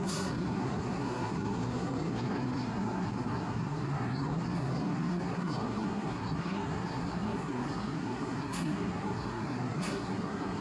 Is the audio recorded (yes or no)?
no